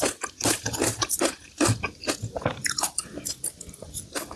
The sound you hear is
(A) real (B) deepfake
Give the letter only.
A